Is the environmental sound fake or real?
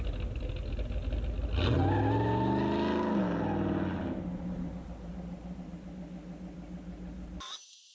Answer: real